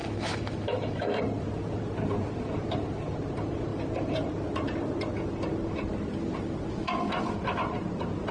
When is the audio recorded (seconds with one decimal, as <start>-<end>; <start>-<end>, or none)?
1.2-8.3